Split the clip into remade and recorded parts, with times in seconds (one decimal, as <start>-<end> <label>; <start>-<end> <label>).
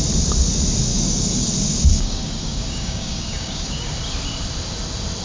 0.0-0.9 recorded; 0.9-1.5 remade; 1.5-1.9 recorded; 1.9-3.9 remade; 3.9-5.2 recorded